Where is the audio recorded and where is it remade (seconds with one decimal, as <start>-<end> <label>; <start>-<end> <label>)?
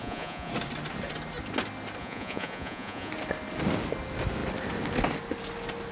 0.0-0.5 remade; 0.5-2.0 recorded; 2.0-3.1 remade; 3.1-5.9 recorded